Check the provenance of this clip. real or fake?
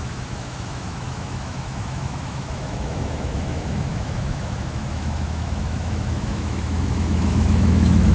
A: fake